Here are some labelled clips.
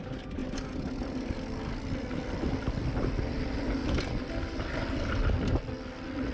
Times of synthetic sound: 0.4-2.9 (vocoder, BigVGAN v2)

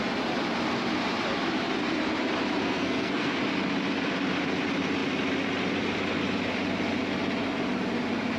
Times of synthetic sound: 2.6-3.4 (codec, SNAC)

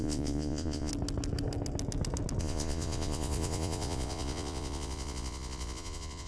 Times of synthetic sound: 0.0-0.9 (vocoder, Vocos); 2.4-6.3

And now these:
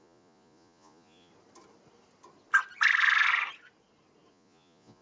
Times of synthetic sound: 0.0-1.3 (vocoder, Vocos); 4.3-5.0

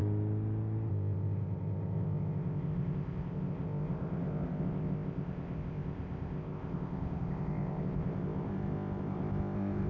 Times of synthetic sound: 0.9-9.9 (codec, ZipCodec)